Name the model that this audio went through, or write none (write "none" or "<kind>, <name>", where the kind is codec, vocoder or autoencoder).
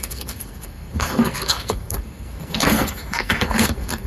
codec, SNAC